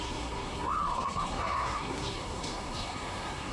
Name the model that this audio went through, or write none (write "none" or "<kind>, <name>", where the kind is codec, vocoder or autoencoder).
codec, SNAC